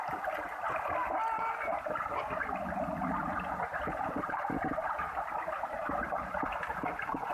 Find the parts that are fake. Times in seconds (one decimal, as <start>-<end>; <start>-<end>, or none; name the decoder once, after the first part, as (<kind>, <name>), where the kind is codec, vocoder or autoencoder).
3.7-7.3 (vocoder, BigVGAN v2)